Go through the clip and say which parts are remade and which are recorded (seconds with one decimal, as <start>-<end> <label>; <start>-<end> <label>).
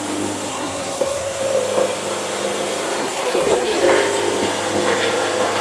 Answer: 0.0-0.5 recorded; 0.5-1.4 remade; 1.4-3.0 recorded; 3.0-3.8 remade; 3.8-5.6 recorded